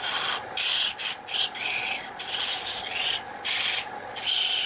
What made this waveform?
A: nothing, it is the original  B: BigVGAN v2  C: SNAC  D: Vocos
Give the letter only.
A